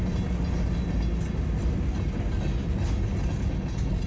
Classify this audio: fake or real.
real